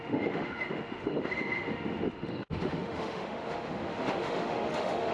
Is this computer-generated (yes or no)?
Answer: yes